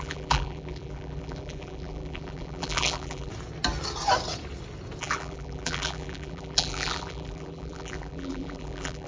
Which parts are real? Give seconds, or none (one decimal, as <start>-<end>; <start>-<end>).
3.3-5.0